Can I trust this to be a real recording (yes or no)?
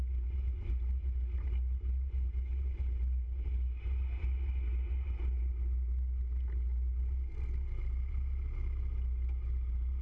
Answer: yes